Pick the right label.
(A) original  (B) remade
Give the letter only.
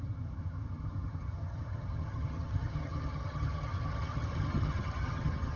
B